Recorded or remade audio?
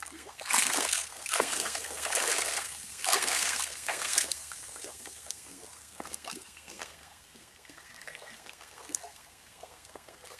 remade